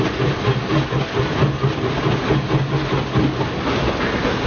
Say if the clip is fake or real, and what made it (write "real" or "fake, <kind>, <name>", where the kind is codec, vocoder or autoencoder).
real